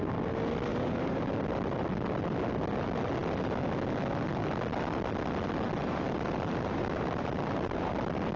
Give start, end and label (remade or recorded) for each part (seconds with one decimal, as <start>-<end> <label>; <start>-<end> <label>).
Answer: 0.0-0.7 recorded; 0.7-1.2 remade; 1.2-5.8 recorded; 5.8-7.9 remade; 7.9-8.4 recorded